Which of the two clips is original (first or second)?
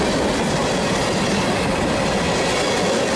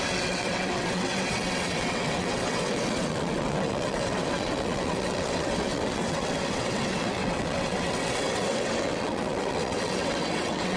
first